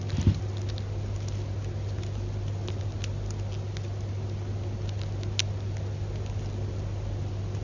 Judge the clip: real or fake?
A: real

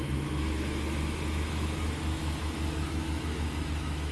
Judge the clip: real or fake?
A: fake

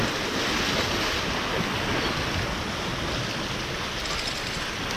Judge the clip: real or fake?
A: real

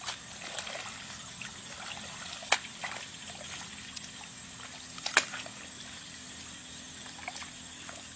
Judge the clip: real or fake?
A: real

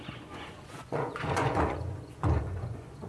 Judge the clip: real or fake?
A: fake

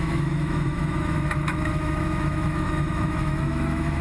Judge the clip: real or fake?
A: fake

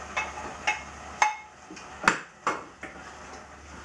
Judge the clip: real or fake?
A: real